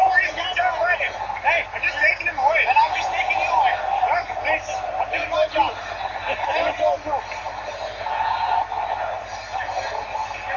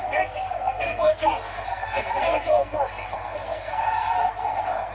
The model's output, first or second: second